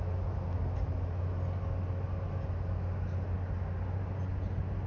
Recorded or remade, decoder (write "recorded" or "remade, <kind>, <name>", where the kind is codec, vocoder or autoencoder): recorded